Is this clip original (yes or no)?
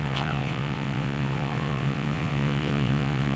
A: no